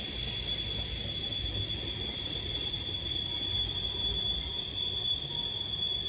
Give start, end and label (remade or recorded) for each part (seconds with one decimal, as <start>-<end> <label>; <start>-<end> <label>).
0.0-2.1 recorded; 2.1-6.1 remade